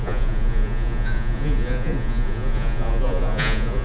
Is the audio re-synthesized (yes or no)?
yes